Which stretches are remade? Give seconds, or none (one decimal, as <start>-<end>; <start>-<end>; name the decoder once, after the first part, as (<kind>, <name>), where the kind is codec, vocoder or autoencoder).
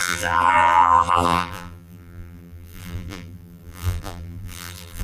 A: 0.0-5.0 (vocoder, BigVGAN v2)